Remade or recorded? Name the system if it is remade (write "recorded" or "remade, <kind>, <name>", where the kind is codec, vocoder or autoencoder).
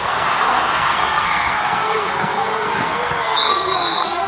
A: remade, codec, SNAC